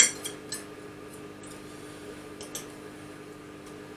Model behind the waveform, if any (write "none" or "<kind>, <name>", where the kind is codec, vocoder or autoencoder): none